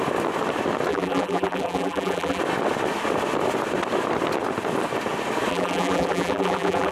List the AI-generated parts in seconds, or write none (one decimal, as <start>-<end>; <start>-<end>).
0.9-2.4; 5.5-6.9